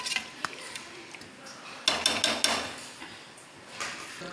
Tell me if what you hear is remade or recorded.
recorded